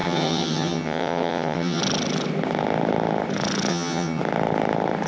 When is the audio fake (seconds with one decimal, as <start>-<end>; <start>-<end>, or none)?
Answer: 0.0-1.8; 3.7-4.2